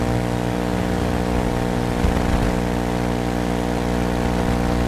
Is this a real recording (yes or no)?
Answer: yes